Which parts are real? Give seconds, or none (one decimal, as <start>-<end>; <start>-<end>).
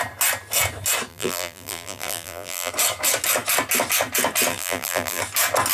0.0-1.1; 2.7-4.5; 5.2-5.7